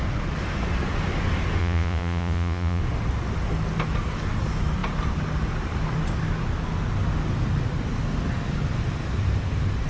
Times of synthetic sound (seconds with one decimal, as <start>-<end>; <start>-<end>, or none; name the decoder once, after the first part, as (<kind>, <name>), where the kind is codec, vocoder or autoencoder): 1.6-2.8 (vocoder, Vocos)